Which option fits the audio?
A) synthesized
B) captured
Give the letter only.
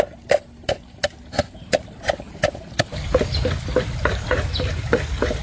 B